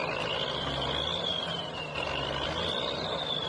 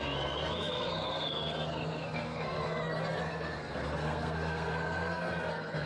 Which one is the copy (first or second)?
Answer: second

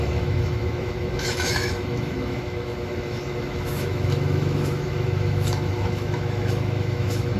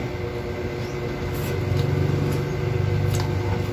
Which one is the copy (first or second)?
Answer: first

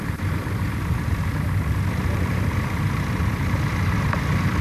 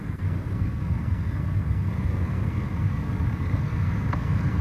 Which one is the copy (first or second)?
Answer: second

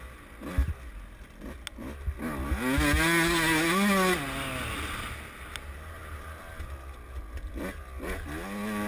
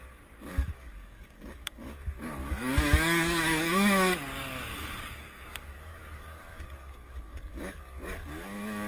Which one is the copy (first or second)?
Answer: second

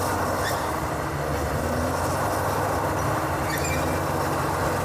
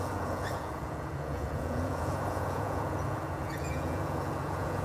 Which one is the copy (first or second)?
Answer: second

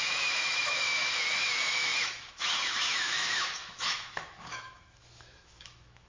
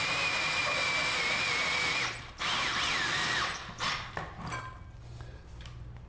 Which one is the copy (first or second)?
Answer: first